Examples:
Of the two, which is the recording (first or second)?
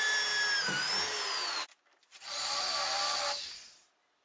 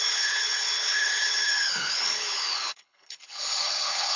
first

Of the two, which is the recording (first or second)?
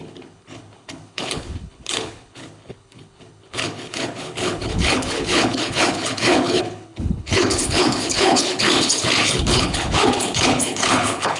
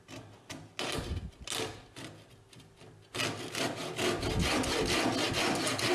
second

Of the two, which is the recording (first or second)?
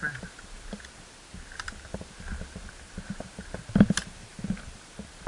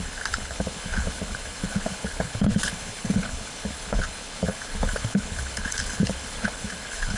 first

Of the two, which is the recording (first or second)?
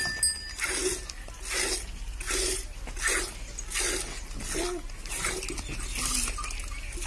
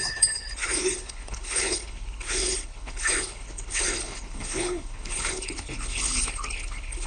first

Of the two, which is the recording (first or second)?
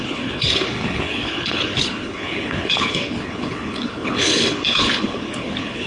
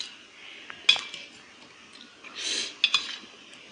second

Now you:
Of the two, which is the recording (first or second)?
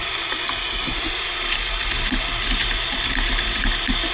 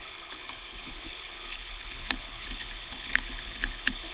first